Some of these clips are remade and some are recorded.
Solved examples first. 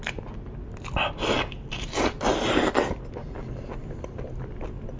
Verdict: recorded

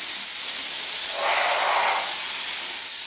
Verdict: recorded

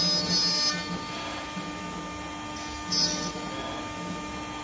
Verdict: recorded